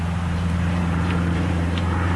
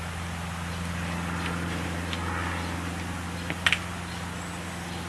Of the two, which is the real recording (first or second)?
second